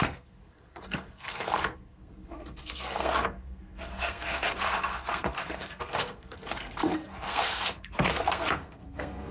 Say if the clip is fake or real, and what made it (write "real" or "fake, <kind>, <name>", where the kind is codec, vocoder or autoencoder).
fake, codec, SNAC